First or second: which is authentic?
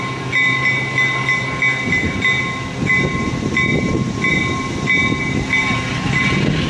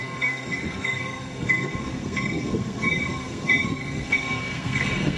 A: first